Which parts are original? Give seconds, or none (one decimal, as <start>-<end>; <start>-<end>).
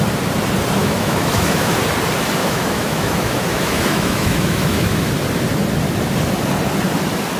0.0-0.8; 1.7-2.4; 5.1-7.4